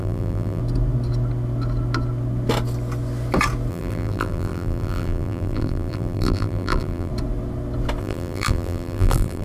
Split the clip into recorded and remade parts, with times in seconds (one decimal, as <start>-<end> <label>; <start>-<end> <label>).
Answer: 0.0-0.6 remade; 0.6-3.7 recorded; 3.7-7.1 remade; 7.1-8.0 recorded; 8.0-9.4 remade